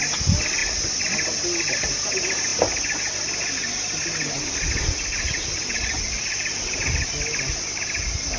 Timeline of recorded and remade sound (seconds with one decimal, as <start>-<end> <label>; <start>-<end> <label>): 0.0-8.4 recorded